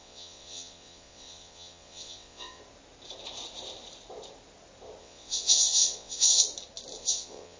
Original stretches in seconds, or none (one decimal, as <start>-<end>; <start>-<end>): 2.6-5.0; 6.4-7.0